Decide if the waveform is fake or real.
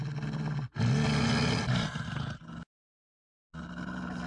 real